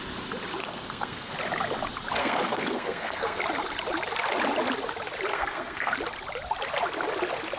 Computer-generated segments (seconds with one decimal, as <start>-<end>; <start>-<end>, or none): 0.6-1.3; 2.2-3.4; 5.3-5.9